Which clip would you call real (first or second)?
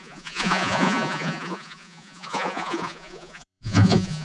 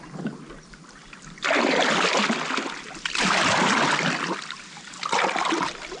second